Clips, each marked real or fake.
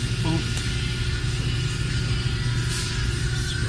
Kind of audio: real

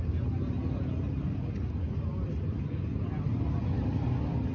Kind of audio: real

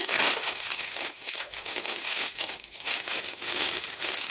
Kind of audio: fake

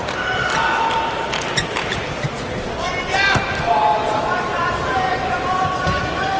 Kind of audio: real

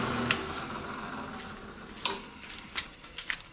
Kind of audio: real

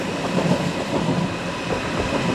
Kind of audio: real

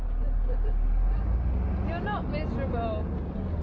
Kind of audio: real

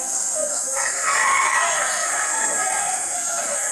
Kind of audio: fake